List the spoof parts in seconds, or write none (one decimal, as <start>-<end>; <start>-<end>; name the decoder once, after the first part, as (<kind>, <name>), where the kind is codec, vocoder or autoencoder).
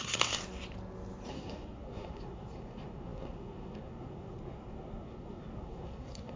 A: 0.0-0.4 (codec, SNAC); 1.3-6.4